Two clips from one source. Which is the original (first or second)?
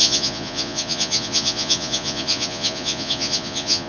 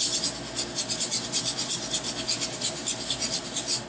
second